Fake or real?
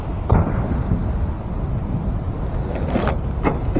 real